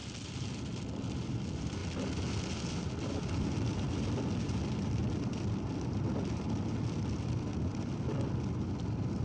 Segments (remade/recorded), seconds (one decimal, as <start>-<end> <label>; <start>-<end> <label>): 0.0-1.2 recorded; 1.2-1.8 remade; 1.8-3.1 recorded; 3.1-5.0 remade; 5.0-5.7 recorded; 5.7-9.2 remade